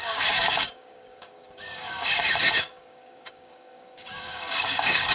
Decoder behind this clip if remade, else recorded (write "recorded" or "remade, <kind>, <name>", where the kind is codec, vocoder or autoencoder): remade, codec, DAC